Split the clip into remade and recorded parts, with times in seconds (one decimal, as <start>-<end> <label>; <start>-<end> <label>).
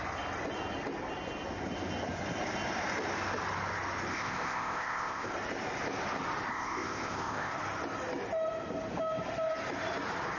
0.0-4.1 recorded; 4.1-5.3 remade; 5.3-6.5 recorded; 6.5-7.5 remade; 7.5-10.4 recorded